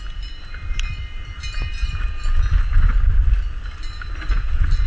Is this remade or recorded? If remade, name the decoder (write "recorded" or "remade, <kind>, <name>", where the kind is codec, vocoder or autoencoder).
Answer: remade, vocoder, BigVGAN v2